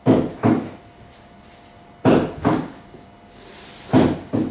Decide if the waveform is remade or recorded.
recorded